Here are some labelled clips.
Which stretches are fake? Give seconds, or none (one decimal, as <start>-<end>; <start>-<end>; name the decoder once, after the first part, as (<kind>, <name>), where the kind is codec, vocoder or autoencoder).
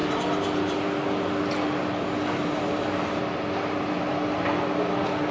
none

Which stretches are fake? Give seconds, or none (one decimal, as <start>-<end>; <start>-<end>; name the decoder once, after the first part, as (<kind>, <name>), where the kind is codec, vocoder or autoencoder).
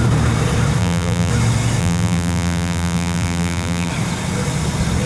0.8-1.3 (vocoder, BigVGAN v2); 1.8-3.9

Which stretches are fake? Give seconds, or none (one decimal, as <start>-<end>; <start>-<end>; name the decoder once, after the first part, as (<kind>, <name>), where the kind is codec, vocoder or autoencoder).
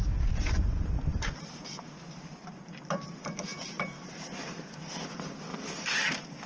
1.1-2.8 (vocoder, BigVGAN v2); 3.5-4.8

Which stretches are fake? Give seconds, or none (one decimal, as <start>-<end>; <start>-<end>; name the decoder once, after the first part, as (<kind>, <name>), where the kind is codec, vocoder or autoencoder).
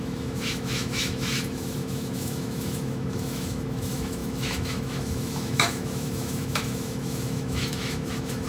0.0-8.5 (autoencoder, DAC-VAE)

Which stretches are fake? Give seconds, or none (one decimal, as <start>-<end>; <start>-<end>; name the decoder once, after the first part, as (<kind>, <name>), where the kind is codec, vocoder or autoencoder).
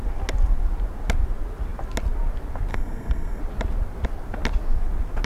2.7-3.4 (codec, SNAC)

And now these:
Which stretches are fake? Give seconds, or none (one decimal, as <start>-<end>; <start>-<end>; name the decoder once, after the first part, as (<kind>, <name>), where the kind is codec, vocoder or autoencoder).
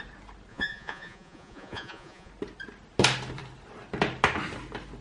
0.5-2.3 (vocoder, Vocos)